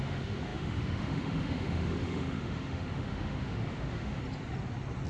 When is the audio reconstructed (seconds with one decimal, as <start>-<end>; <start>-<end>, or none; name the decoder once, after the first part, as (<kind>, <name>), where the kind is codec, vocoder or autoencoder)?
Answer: 0.0-4.2 (autoencoder, DAC-VAE)